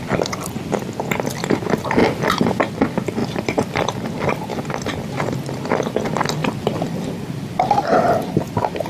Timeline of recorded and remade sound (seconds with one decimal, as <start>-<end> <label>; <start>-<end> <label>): 0.0-3.2 recorded; 3.2-3.9 remade; 3.9-4.5 recorded; 4.5-5.1 remade; 5.1-6.4 recorded; 6.4-8.4 remade; 8.4-8.9 recorded